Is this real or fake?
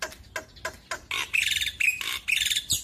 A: real